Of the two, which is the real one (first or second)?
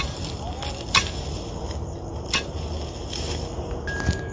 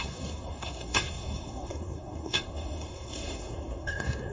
first